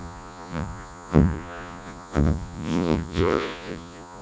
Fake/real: fake